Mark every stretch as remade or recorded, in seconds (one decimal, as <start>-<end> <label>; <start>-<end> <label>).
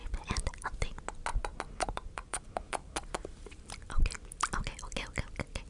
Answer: 0.0-0.9 remade; 0.9-1.3 recorded; 1.3-4.1 remade; 4.1-5.7 recorded